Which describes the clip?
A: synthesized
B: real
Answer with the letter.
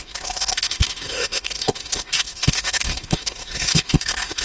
A